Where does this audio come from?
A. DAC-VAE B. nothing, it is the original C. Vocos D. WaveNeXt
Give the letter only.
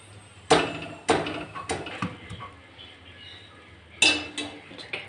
B